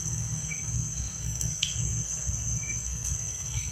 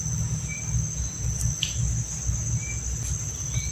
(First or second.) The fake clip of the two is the first